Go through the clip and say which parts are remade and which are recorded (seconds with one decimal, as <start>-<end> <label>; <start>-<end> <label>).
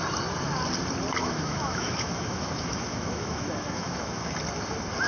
0.0-1.2 recorded; 1.2-4.3 remade; 4.3-5.1 recorded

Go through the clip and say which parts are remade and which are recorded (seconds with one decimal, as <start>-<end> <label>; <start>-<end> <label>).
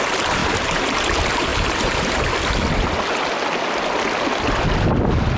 0.0-0.4 recorded; 0.4-1.0 remade; 1.0-1.5 recorded; 1.5-2.3 remade; 2.3-5.4 recorded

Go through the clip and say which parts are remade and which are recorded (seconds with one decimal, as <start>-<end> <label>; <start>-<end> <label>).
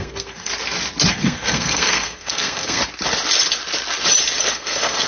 0.0-0.5 remade; 0.5-1.1 recorded; 1.1-2.8 remade; 2.8-4.4 recorded; 4.4-5.1 remade